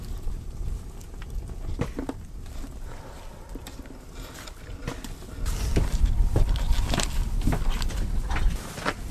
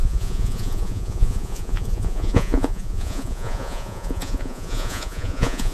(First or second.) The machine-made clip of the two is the second